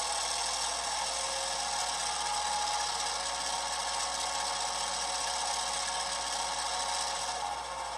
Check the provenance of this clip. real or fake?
real